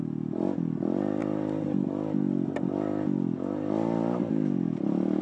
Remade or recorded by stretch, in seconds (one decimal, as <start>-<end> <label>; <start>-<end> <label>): 0.0-1.2 recorded; 1.2-4.3 remade; 4.3-5.2 recorded